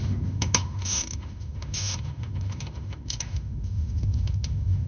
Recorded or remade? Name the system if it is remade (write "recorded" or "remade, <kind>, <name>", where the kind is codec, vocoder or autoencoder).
remade, autoencoder, DAC-VAE